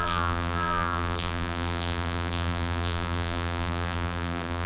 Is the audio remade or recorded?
remade